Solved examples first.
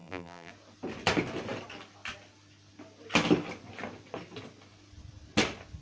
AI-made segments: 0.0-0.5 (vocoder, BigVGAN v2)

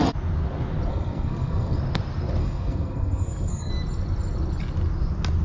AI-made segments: 0.9-1.8 (codec, SNAC); 2.4-3.7